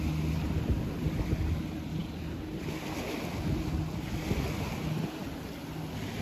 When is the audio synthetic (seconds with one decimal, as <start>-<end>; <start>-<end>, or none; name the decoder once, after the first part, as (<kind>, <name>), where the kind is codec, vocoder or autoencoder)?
none